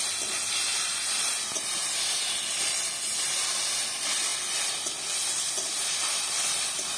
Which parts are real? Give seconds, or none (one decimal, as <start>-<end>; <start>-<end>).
0.0-7.0